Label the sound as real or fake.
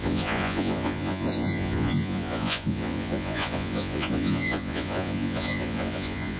fake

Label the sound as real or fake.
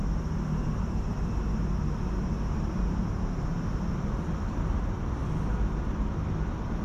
real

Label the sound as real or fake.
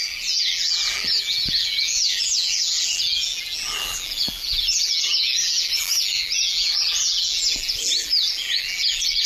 fake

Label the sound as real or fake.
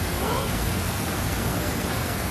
fake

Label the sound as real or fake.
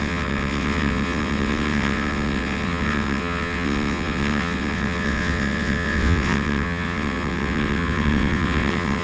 fake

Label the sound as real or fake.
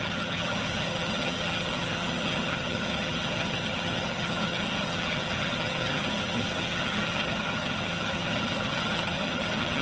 fake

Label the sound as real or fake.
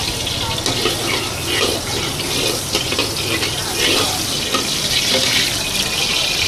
real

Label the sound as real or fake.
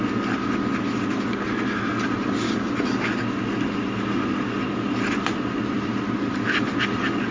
real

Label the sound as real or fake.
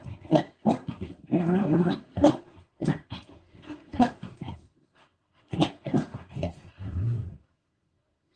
fake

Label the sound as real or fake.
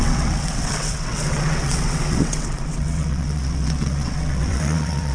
fake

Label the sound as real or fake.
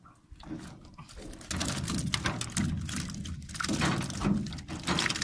real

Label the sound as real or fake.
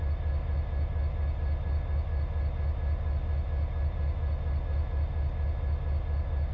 real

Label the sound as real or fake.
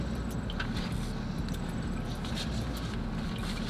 real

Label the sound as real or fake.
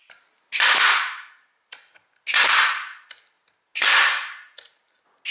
real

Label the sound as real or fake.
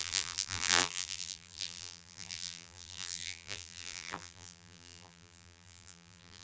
fake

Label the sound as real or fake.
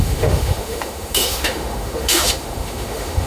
fake